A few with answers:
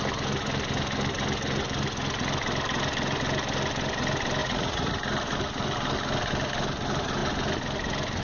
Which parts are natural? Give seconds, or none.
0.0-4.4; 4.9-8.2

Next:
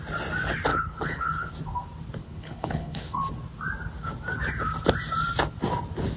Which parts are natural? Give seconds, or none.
0.0-0.7; 1.5-2.2; 3.2-6.2

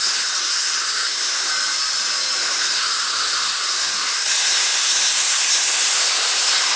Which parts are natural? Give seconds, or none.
1.5-2.4

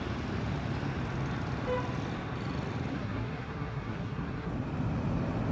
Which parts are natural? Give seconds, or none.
0.0-2.9; 4.5-5.5

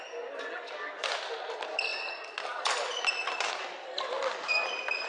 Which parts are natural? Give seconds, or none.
0.0-5.1

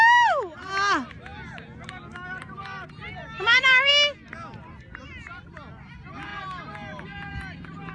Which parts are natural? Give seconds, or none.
0.0-7.9

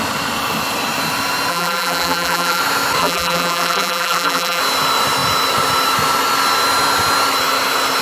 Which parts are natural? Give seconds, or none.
0.0-1.5; 2.6-3.0; 4.6-8.0

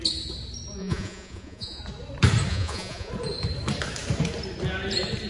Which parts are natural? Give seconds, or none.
0.0-0.8; 1.8-2.5; 3.1-5.3